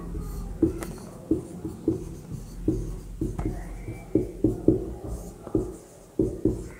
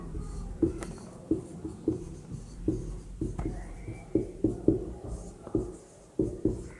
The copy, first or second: second